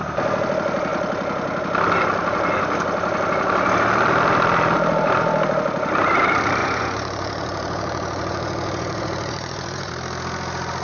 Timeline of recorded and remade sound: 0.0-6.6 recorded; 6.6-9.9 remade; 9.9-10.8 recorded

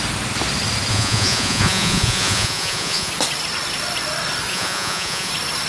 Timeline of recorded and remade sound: 0.0-0.9 recorded; 0.9-3.1 remade; 3.1-4.5 recorded; 4.5-5.3 remade; 5.3-5.7 recorded

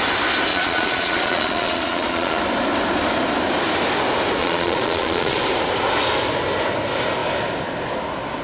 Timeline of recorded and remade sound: 0.0-0.5 recorded; 0.5-2.4 remade; 2.4-4.4 recorded; 4.4-5.4 remade; 5.4-8.4 recorded

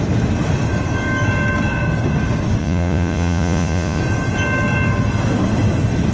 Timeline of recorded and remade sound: 0.0-2.6 recorded; 2.6-4.0 remade; 4.0-6.1 recorded

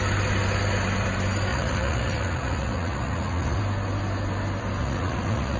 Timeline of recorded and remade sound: 0.0-1.5 recorded; 1.5-3.6 remade; 3.6-4.8 recorded; 4.8-5.6 remade